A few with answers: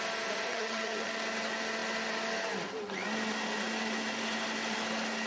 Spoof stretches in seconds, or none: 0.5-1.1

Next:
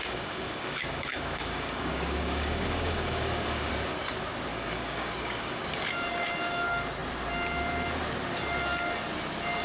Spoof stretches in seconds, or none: 0.0-3.7; 4.5-5.6

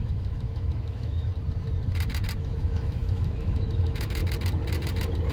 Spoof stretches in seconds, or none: 0.0-1.3; 2.4-4.2

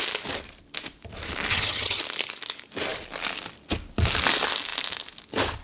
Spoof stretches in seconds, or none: 1.5-2.0